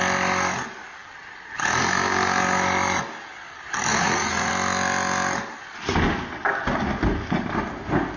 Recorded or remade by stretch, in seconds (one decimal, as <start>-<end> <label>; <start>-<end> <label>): 0.0-3.9 recorded; 3.9-4.5 remade; 4.5-8.2 recorded